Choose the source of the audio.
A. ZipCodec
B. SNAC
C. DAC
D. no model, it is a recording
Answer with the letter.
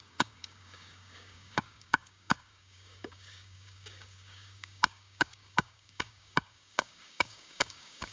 C